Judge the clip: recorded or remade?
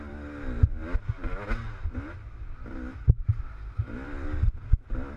recorded